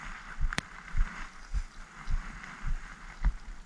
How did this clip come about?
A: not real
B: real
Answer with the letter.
B